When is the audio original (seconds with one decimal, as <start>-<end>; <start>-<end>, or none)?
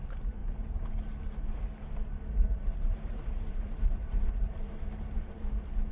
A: 0.0-0.4; 1.0-2.3; 5.4-5.9